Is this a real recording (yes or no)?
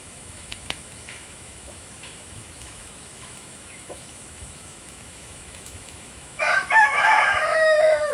no